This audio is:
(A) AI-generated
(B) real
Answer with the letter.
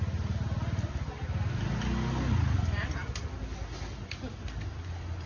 B